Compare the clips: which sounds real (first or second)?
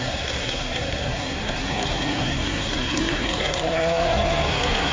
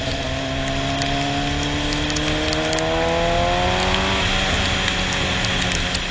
second